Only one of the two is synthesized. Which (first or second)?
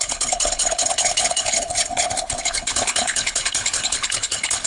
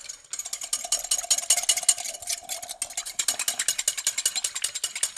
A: first